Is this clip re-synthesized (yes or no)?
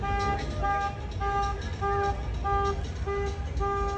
no